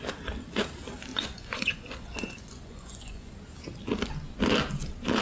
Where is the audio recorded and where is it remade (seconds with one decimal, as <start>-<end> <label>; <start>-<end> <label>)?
0.0-1.1 recorded; 1.1-3.3 remade; 3.3-5.2 recorded